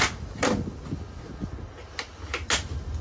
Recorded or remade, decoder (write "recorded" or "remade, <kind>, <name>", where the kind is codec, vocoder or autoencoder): recorded